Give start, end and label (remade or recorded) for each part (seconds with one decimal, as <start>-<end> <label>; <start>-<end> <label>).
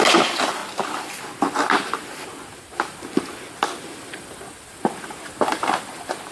0.0-6.3 recorded